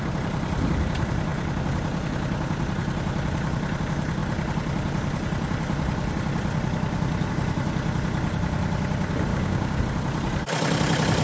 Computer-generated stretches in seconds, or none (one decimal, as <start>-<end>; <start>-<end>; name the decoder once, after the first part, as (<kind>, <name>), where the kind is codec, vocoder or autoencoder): 9.3-9.8 (codec, DAC)